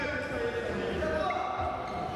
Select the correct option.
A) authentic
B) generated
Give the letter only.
A